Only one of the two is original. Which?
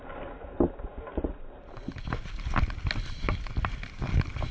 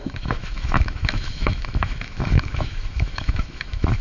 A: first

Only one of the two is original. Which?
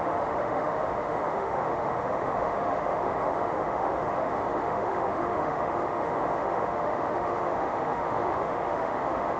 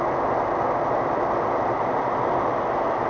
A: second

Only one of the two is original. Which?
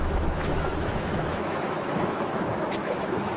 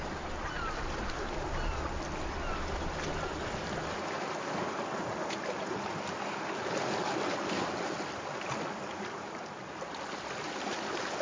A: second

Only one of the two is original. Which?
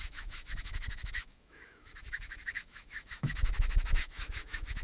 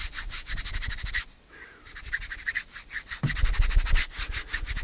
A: second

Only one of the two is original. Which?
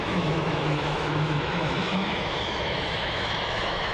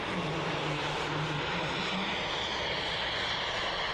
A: second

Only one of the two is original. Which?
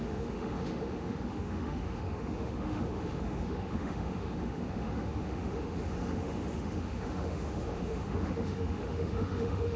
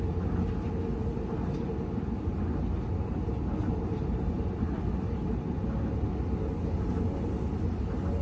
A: second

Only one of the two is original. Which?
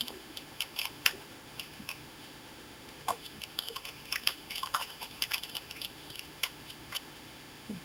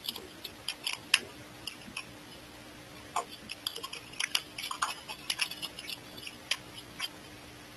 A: second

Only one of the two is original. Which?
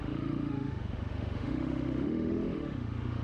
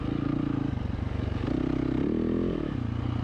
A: second